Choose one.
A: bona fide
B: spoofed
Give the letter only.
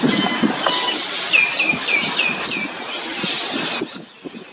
A